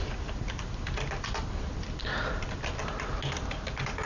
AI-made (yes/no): no